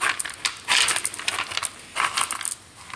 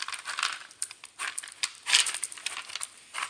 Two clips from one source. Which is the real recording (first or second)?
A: first